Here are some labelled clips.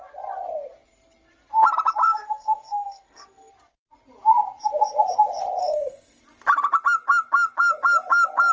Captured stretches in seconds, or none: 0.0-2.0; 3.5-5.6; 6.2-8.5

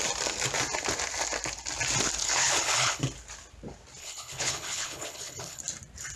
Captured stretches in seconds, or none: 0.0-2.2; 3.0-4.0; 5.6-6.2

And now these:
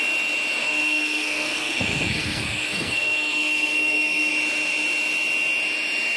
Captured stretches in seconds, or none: 0.0-0.6; 4.3-6.2

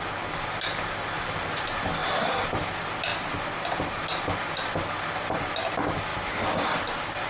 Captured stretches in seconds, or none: 0.0-7.3

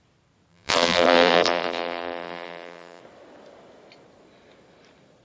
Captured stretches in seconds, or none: 0.0-0.5; 3.0-5.2

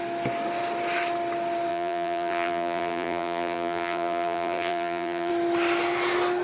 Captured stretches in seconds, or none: 0.0-1.7; 5.3-6.4